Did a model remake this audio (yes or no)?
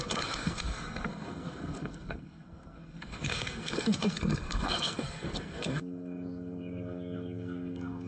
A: yes